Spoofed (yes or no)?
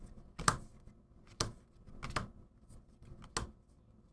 no